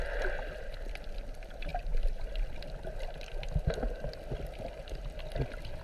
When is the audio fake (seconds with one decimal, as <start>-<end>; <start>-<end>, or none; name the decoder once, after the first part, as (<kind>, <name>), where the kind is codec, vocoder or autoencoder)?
none